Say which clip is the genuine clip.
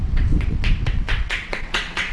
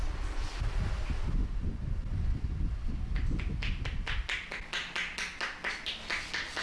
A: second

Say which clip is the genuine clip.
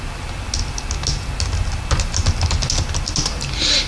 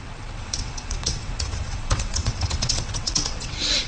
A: first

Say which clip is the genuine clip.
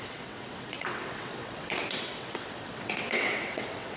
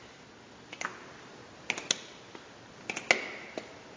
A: second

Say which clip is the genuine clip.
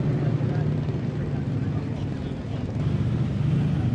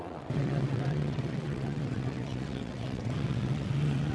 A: first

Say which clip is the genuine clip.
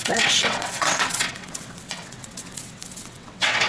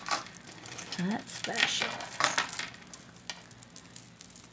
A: second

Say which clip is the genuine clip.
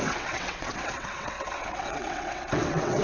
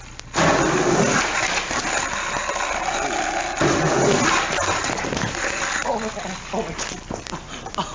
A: second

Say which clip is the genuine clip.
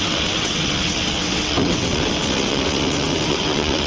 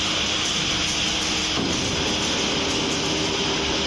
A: second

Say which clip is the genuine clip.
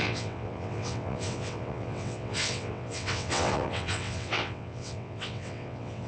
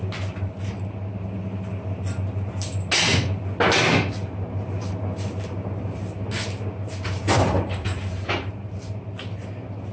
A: second